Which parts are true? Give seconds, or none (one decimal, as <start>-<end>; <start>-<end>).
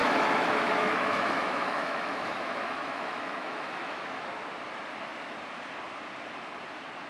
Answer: 4.3-7.1